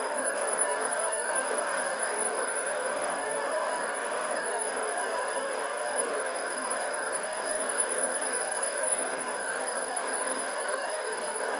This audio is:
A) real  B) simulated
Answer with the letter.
B